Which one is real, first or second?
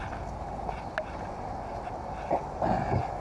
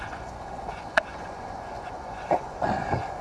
first